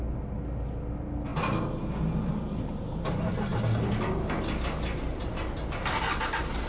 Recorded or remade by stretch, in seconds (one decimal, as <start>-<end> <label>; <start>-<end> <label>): 0.0-6.7 recorded